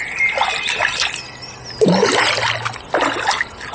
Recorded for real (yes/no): yes